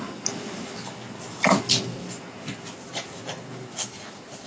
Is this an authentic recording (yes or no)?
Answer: yes